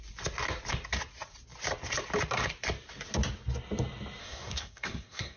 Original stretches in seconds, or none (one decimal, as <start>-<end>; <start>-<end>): 0.0-4.2